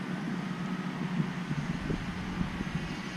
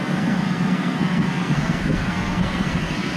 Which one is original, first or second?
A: first